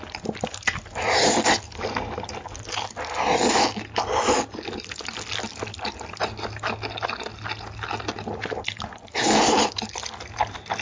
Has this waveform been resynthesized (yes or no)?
no